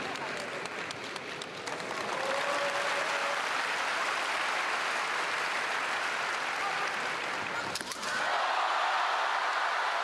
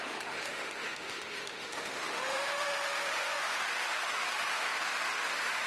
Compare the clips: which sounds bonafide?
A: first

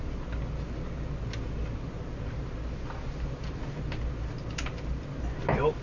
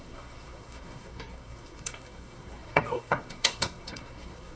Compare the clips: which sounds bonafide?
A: first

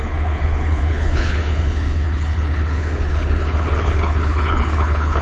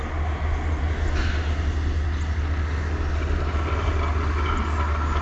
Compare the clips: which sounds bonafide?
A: second